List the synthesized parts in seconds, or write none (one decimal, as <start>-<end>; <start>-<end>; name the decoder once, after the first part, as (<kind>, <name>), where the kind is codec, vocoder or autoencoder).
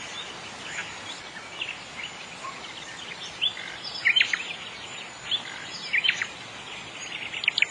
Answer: none